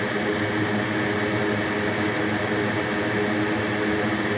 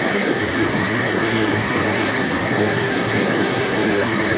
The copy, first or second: second